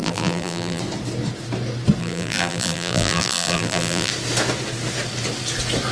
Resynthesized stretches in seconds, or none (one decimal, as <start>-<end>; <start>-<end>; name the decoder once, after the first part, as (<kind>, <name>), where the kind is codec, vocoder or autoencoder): 0.0-0.8 (vocoder, BigVGAN v2); 2.0-4.1